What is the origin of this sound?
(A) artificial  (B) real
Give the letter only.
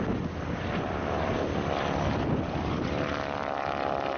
B